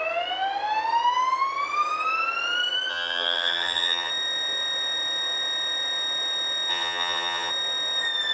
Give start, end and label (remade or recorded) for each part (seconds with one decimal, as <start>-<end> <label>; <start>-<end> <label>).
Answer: 0.0-2.9 recorded; 2.9-4.1 remade; 4.1-6.7 recorded; 6.7-7.5 remade; 7.5-8.3 recorded